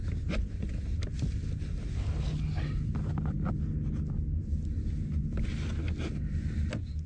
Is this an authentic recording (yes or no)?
yes